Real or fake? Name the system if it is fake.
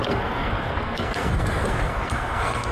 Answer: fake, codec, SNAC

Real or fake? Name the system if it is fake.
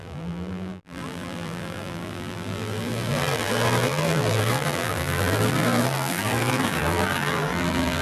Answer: fake, vocoder, BigVGAN v2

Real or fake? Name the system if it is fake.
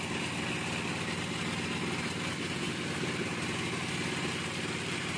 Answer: real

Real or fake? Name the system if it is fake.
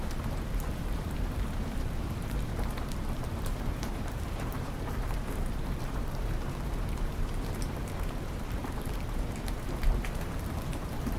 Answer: fake, vocoder, BigVGAN v2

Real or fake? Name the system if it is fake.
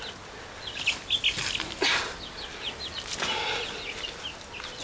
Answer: real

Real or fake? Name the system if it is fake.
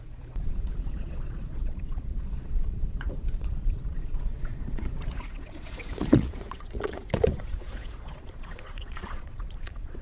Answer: fake, vocoder, Vocos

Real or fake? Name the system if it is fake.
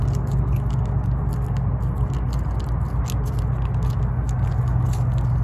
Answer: real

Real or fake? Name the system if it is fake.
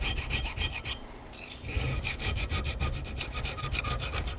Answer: fake, vocoder, BigVGAN v2